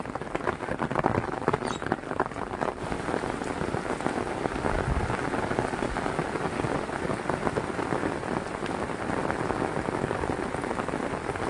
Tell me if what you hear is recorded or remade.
recorded